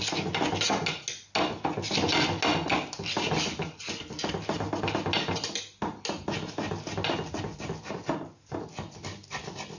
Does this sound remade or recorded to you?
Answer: recorded